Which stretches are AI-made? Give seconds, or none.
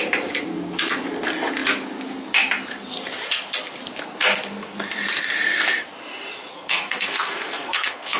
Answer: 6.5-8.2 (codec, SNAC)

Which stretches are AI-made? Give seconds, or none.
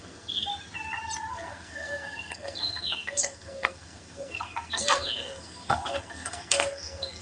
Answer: 0.0-0.5 (codec, SNAC); 1.3-7.2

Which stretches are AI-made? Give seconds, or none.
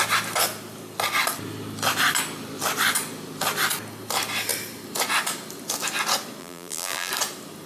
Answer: 6.4-7.1 (vocoder, BigVGAN v2)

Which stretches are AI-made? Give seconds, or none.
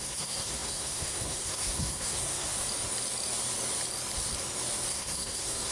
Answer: 0.0-2.5 (codec, SNAC); 4.9-5.7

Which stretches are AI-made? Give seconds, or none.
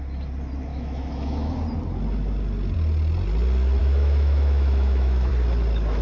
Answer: 0.7-1.5 (autoencoder, DAC-VAE); 3.8-5.3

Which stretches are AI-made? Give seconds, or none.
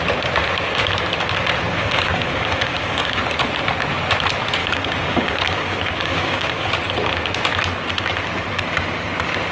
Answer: 1.7-3.2 (codec, DAC); 4.6-6.7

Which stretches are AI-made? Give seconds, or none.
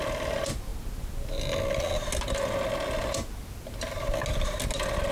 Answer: none